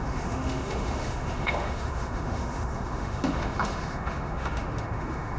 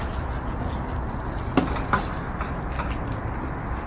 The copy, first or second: first